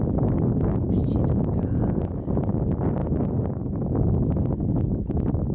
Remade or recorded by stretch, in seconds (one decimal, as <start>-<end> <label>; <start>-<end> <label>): 0.0-5.5 recorded